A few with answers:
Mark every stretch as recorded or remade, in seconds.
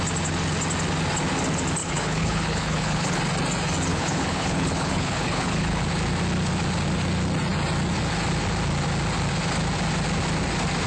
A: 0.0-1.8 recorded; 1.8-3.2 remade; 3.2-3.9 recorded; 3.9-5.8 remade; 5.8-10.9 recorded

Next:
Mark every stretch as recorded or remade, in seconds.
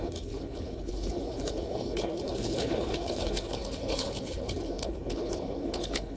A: 0.0-6.2 remade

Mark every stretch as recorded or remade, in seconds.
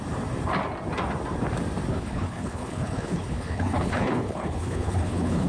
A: 0.0-1.9 recorded; 1.9-5.5 remade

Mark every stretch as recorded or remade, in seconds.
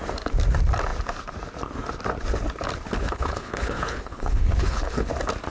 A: 0.0-3.0 recorded; 3.0-5.1 remade; 5.1-5.5 recorded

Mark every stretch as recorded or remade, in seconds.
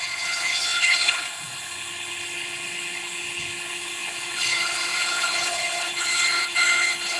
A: 0.0-7.2 remade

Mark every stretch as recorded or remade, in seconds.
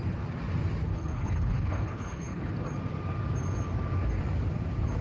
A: 0.0-0.9 recorded; 0.9-2.5 remade; 2.5-5.0 recorded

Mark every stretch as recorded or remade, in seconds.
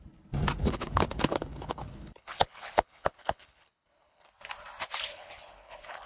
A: 0.0-0.6 recorded; 0.6-4.3 remade; 4.3-5.1 recorded; 5.1-6.1 remade